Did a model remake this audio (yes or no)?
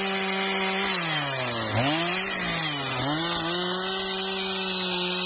no